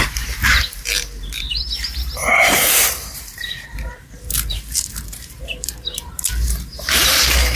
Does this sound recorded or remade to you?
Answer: remade